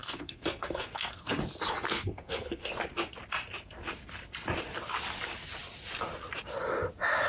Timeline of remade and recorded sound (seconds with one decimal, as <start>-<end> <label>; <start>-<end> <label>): 0.0-1.4 remade; 1.4-1.9 recorded; 1.9-2.7 remade; 2.7-7.3 recorded